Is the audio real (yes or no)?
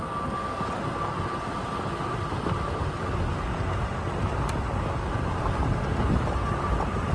yes